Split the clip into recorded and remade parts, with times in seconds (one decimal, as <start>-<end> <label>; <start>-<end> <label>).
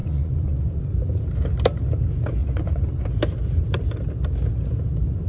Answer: 0.0-0.8 remade; 0.8-2.4 recorded; 2.4-3.1 remade; 3.1-5.3 recorded